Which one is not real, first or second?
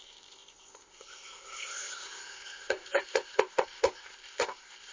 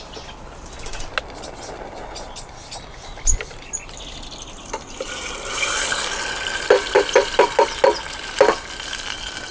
first